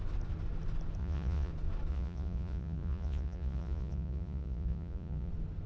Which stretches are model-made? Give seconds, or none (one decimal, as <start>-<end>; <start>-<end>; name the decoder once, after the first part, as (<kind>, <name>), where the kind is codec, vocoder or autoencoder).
1.0-1.5 (vocoder, Vocos); 1.9-5.3